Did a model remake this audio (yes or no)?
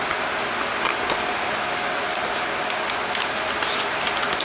no